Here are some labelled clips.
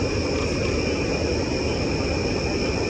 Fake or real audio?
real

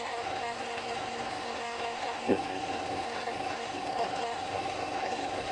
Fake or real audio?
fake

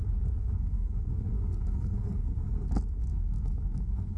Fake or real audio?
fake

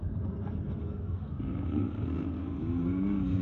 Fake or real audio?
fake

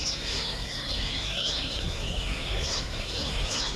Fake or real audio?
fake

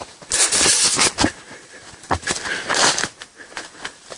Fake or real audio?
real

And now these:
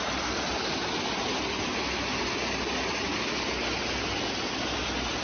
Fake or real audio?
real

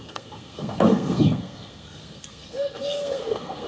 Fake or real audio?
fake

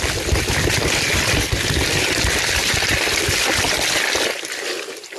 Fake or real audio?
real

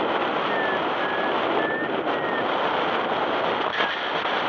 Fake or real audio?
real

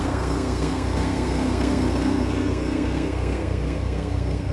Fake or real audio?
fake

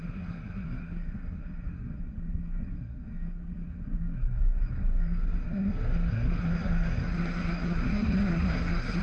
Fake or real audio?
fake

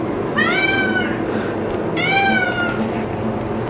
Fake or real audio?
real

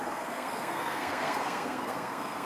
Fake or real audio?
fake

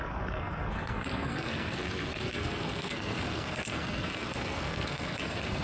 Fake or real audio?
fake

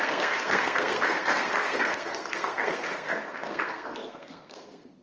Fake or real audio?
fake